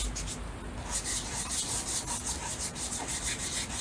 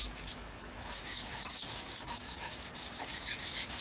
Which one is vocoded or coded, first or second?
second